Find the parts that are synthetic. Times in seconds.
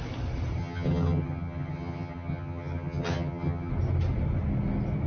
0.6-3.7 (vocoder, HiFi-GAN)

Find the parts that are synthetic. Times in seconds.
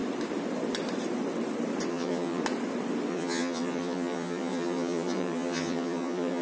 1.9-2.4 (vocoder, HiFi-GAN); 3.1-6.4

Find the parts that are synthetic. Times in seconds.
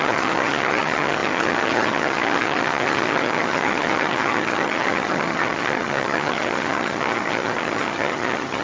0.0-8.6 (vocoder, HiFi-GAN)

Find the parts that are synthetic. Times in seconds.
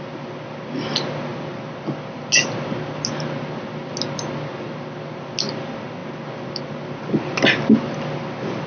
none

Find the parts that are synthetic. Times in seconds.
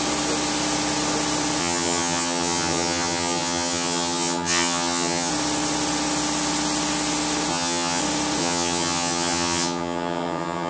1.6-5.3 (vocoder, HiFi-GAN); 7.5-8.0; 8.4-10.7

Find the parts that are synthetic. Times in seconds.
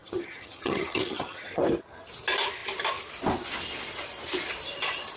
0.0-1.6 (vocoder, HiFi-GAN)